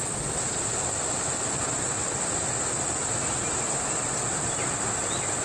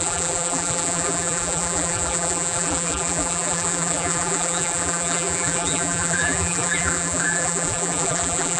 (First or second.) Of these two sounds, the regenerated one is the second